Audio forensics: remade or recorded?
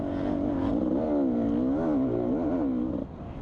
recorded